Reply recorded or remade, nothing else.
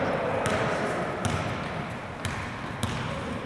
recorded